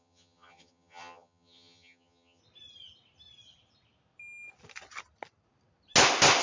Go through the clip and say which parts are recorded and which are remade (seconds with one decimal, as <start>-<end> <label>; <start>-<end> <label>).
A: 0.0-2.4 remade; 2.4-6.4 recorded